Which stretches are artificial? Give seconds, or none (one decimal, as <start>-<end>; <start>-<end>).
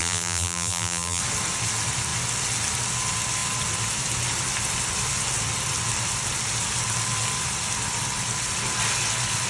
0.0-1.2